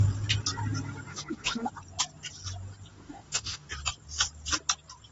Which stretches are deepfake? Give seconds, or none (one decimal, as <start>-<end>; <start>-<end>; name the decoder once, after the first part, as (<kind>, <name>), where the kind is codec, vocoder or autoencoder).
1.1-1.7 (autoencoder, DAC-VAE); 2.9-3.7